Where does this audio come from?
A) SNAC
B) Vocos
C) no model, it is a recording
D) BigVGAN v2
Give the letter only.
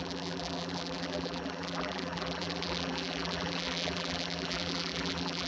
D